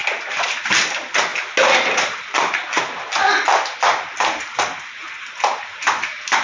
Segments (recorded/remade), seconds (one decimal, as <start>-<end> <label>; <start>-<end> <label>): 0.0-6.4 recorded

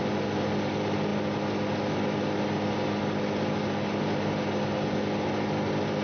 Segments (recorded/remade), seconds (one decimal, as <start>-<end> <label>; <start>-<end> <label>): 0.0-6.0 recorded

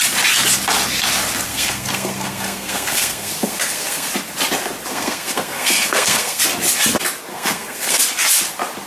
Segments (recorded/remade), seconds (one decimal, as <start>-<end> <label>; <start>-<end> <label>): 0.0-1.5 recorded; 1.5-4.1 remade; 4.1-4.9 recorded; 4.9-6.4 remade; 6.4-7.3 recorded; 7.3-8.0 remade; 8.0-8.9 recorded

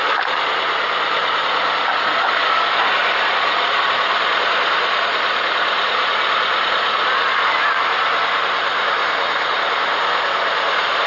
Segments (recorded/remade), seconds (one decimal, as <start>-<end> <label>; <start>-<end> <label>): 0.0-3.0 recorded; 3.0-4.5 remade; 4.5-11.1 recorded